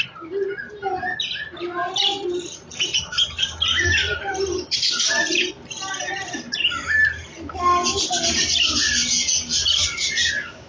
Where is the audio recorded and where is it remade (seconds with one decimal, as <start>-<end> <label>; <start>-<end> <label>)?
0.0-1.8 recorded; 1.8-5.5 remade; 5.5-10.7 recorded